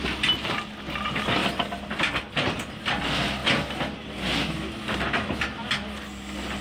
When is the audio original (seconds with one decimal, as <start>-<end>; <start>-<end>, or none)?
0.0-6.6